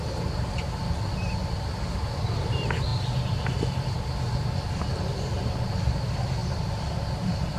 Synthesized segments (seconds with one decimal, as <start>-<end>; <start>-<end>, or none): 6.4-7.1